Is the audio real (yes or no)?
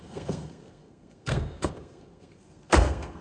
no